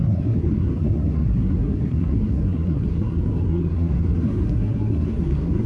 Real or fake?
fake